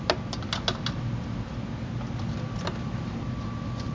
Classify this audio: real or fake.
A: real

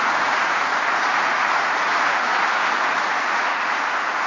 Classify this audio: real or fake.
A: fake